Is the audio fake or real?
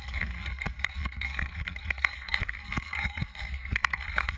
fake